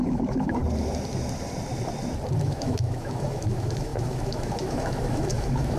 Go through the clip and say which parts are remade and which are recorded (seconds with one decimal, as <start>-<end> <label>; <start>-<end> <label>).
0.0-0.6 remade; 0.6-2.4 recorded; 2.4-5.8 remade